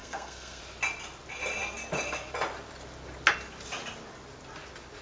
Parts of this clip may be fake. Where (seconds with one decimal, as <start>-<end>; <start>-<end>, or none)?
0.0-0.6